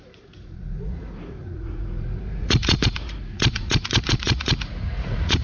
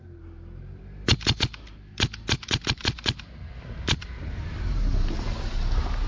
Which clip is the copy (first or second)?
first